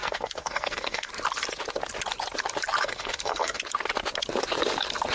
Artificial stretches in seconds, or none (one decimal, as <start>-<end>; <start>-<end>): 0.0-1.1; 2.8-3.6